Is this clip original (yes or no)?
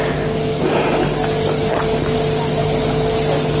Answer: yes